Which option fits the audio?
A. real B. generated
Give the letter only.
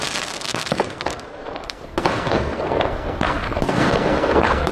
B